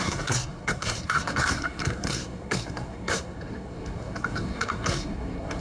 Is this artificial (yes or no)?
yes